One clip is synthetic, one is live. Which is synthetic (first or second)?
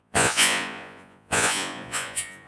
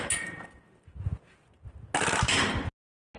first